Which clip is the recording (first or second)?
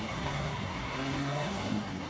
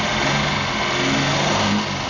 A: second